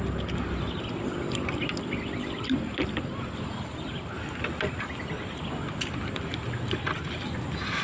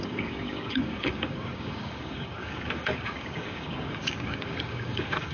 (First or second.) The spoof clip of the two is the second